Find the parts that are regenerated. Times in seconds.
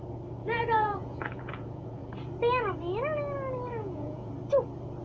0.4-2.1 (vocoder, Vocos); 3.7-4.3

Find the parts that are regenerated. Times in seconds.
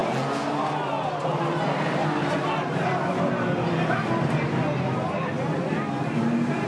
none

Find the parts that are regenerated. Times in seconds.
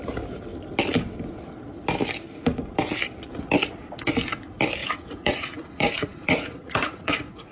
4.8-7.5 (vocoder, Vocos)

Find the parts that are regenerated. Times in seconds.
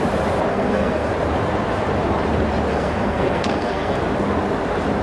0.5-1.1 (codec, SNAC); 2.7-4.0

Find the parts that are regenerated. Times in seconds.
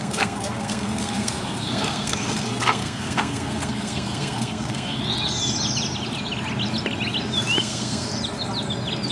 0.0-5.0 (codec, SNAC); 7.6-8.1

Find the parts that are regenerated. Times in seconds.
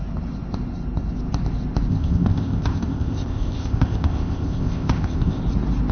1.9-5.4 (codec, ZipCodec)